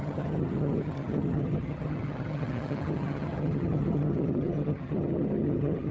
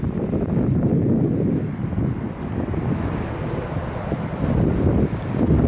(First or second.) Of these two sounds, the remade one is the first